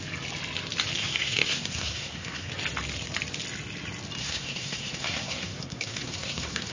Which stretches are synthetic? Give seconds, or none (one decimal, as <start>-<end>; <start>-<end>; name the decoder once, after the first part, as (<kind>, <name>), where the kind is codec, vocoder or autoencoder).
1.0-2.5 (codec, SNAC); 4.2-6.7